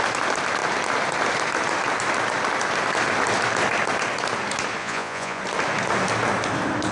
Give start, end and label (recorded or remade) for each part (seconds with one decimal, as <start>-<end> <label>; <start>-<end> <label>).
0.0-4.8 recorded; 4.8-5.4 remade; 5.4-6.9 recorded